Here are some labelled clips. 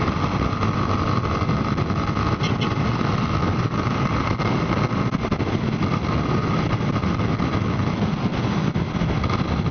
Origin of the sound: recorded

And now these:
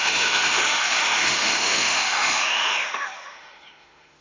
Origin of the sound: remade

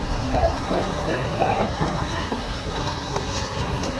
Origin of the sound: remade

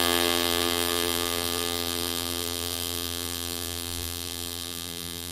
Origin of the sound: remade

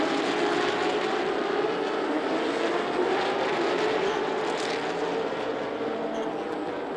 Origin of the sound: recorded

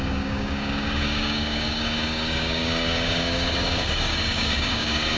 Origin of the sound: remade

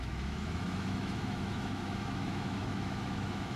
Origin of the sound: remade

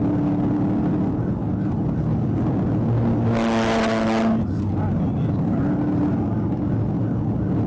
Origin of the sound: recorded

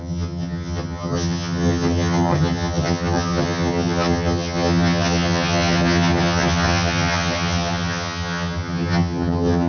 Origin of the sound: remade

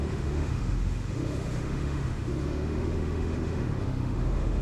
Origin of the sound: remade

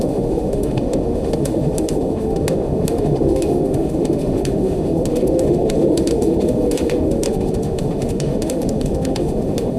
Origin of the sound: remade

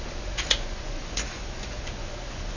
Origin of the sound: remade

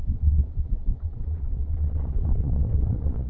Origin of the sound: remade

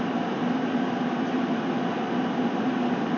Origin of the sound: recorded